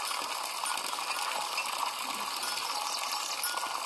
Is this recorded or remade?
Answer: recorded